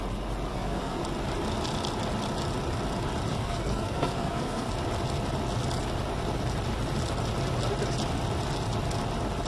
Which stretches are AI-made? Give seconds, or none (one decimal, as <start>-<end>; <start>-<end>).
0.5-1.0; 3.3-4.7